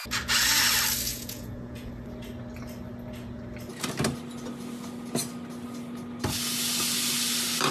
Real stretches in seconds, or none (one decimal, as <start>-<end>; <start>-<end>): 0.0-1.1; 1.9-7.7